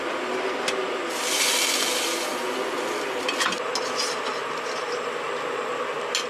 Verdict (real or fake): real